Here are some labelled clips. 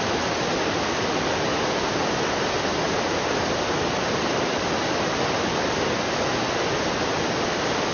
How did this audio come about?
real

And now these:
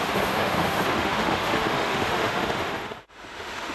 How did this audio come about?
fake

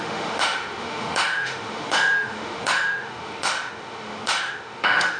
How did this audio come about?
fake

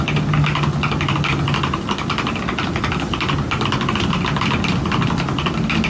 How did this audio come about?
real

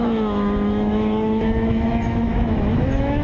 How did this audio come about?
fake